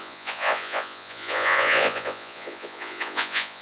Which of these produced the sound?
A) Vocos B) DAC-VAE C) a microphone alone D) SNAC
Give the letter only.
A